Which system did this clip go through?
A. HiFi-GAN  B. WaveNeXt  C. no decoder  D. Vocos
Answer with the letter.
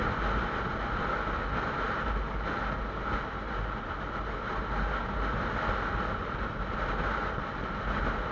C